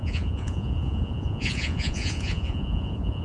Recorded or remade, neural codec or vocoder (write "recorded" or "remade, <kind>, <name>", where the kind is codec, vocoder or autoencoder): remade, vocoder, Vocos